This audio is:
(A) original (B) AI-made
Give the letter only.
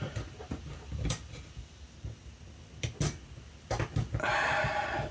A